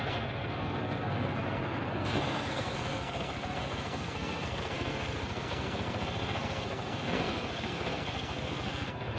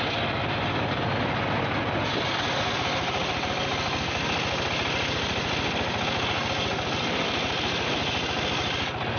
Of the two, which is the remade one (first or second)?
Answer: first